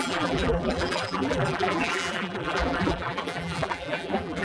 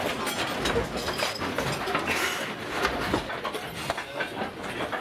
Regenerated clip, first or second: first